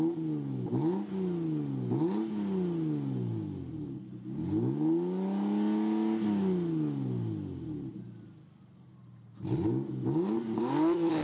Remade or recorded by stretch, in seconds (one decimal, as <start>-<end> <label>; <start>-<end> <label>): 0.0-11.2 recorded